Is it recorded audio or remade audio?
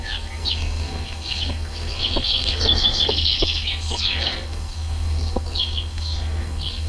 remade